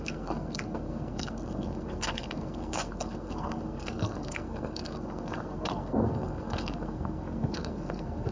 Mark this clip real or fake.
fake